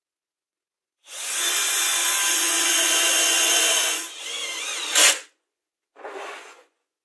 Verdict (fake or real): fake